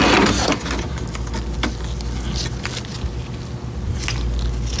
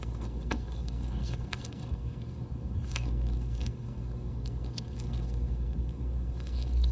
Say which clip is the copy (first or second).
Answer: second